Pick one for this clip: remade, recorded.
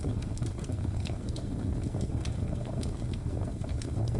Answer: remade